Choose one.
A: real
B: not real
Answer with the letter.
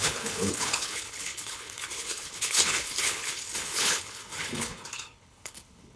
B